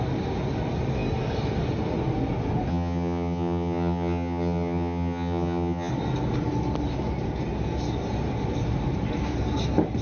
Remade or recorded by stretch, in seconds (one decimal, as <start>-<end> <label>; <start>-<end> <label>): 0.0-2.7 recorded; 2.7-5.9 remade; 5.9-10.0 recorded